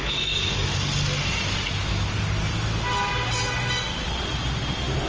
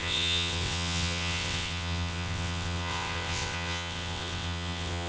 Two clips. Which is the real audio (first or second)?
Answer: first